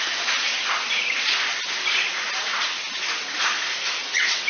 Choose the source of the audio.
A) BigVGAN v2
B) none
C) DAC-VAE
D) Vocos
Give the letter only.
B